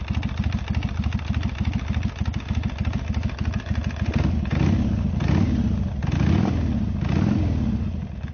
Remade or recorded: recorded